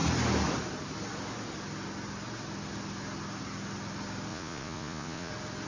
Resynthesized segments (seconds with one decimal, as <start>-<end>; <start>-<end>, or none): 4.3-5.3